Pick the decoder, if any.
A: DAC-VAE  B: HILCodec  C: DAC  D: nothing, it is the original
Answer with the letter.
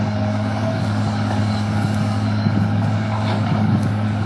C